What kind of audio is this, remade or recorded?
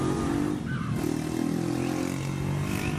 recorded